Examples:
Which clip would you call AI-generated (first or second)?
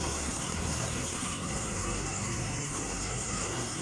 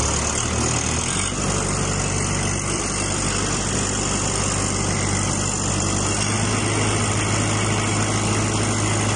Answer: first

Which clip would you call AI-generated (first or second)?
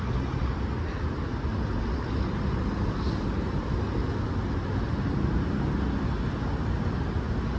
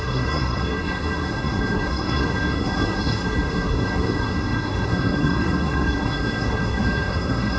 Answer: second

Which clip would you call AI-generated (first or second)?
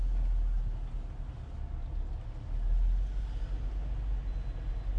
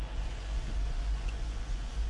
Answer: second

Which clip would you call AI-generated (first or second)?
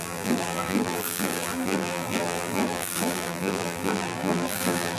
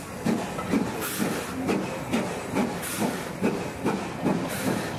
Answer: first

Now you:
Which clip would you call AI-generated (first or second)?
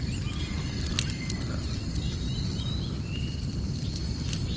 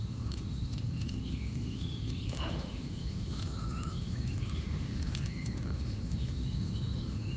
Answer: second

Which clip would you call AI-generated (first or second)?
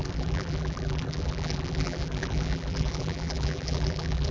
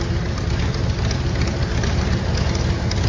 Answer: first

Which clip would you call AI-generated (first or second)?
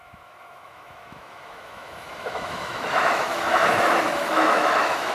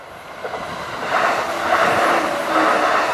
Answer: first